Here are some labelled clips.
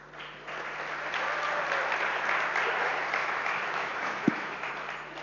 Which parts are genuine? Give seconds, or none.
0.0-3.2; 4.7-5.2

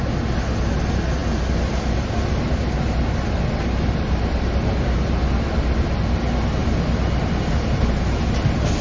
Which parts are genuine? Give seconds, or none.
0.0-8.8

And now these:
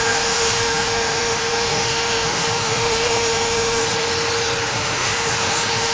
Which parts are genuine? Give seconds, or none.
3.8-4.7

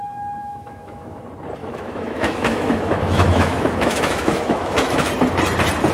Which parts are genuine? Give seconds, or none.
0.0-0.4; 1.2-1.6; 5.1-5.9

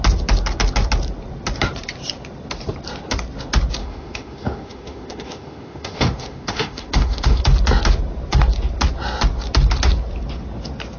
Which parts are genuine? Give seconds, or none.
0.0-3.8; 7.4-11.0